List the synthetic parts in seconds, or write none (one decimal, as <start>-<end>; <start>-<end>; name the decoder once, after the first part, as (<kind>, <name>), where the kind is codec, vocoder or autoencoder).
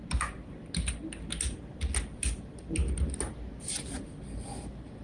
none